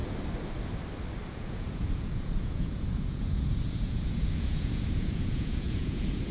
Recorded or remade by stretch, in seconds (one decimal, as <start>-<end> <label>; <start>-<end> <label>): 0.0-1.3 recorded; 1.3-6.3 remade